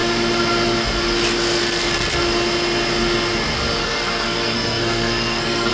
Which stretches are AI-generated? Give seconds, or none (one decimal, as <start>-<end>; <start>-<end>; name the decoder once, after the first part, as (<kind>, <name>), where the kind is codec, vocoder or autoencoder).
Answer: 3.8-5.7 (codec, SNAC)